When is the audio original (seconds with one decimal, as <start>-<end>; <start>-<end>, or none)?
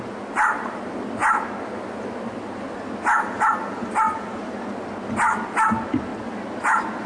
0.0-7.1